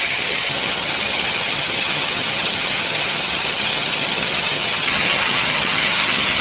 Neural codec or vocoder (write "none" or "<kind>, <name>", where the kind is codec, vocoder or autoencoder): vocoder, HiFi-GAN